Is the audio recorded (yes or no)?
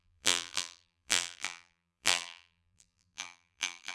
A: no